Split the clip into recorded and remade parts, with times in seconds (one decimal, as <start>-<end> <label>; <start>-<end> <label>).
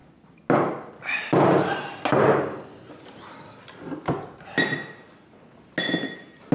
0.0-6.5 recorded